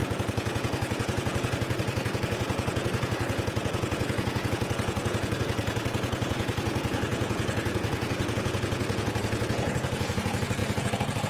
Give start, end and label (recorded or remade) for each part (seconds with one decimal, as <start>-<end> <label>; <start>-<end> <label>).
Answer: 0.0-11.3 remade